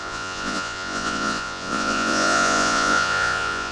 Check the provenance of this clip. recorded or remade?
remade